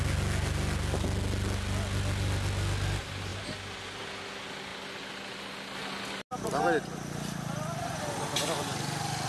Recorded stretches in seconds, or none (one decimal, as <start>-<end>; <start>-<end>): 0.0-9.3